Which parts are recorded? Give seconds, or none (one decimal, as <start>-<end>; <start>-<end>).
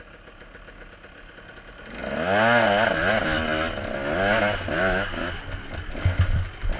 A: 0.0-6.8